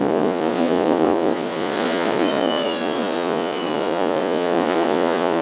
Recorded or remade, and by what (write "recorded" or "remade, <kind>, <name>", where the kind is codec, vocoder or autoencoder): remade, vocoder, Vocos